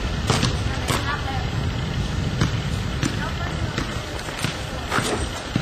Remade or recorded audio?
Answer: recorded